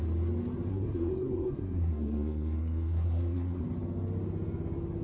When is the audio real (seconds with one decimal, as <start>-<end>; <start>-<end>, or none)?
0.0-0.7; 3.6-5.0